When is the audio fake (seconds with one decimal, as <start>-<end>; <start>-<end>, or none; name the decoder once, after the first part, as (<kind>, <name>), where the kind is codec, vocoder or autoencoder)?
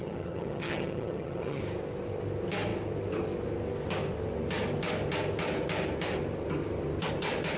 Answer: 0.0-1.6 (vocoder, HiFi-GAN)